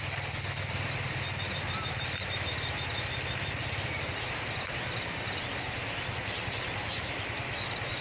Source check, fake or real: real